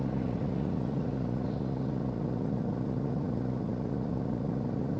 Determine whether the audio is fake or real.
fake